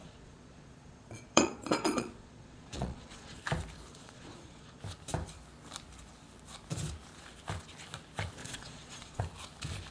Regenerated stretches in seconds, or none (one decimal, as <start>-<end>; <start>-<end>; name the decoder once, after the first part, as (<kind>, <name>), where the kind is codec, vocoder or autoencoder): 0.0-3.4 (vocoder, Vocos); 3.9-4.8; 8.4-9.2